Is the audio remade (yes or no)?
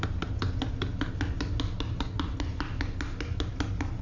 no